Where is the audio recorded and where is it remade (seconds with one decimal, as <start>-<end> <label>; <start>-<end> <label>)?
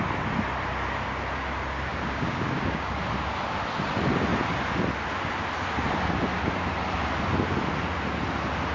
0.0-1.9 recorded; 1.9-2.9 remade; 2.9-8.7 recorded